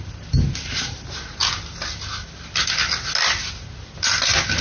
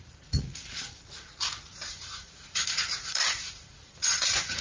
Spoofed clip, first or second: second